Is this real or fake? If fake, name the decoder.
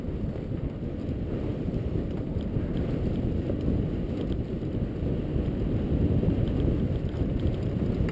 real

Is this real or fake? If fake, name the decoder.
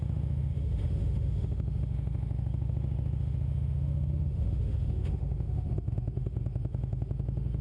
fake, autoencoder, DAC-VAE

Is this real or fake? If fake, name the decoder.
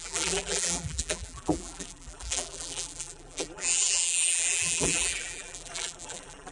fake, vocoder, BigVGAN v2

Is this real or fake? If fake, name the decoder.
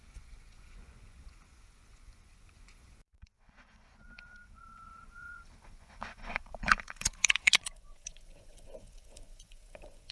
fake, vocoder, Vocos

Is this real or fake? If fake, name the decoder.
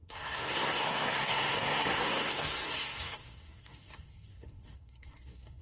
fake, codec, SNAC